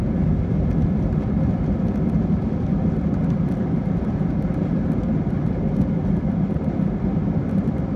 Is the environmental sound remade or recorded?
recorded